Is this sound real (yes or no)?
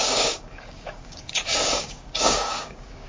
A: no